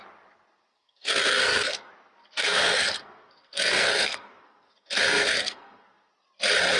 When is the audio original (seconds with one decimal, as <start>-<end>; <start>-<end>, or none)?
0.0-0.7; 1.9-2.4; 6.1-6.8

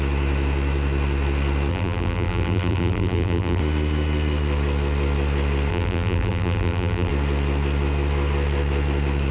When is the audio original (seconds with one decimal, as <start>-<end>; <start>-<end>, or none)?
0.0-1.7; 3.6-5.7; 7.1-9.3

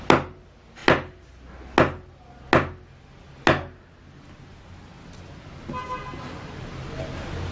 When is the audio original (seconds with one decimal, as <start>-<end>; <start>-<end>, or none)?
0.0-7.5

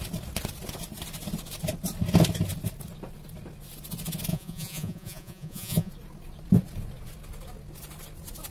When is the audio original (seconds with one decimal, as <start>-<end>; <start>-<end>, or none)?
0.0-4.3; 5.9-8.5